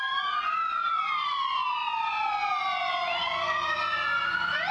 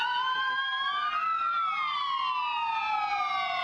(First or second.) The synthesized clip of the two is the first